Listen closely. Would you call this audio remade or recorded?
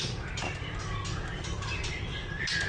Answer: remade